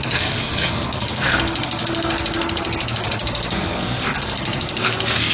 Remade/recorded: remade